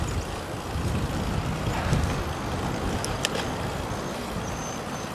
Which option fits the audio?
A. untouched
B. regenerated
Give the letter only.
A